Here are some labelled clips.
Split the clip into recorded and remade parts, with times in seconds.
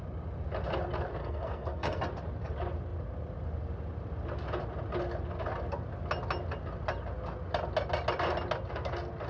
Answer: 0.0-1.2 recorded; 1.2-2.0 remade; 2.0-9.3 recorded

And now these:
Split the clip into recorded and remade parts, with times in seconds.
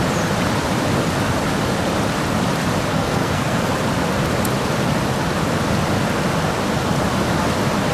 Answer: 0.0-2.9 recorded; 2.9-3.7 remade; 3.7-7.9 recorded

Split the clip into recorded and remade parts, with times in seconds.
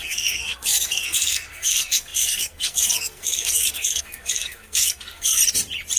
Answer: 0.0-5.4 remade; 5.4-6.0 recorded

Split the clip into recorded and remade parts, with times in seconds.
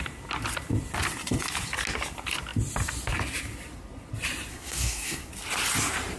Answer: 0.0-4.5 recorded; 4.5-5.3 remade; 5.3-6.2 recorded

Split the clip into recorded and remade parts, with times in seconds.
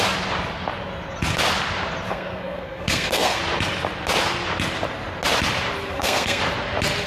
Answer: 0.0-2.1 recorded; 2.1-3.4 remade; 3.4-5.8 recorded; 5.8-6.4 remade; 6.4-7.1 recorded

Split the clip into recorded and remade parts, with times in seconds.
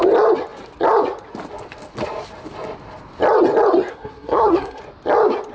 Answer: 0.0-3.9 recorded; 3.9-4.8 remade; 4.8-5.5 recorded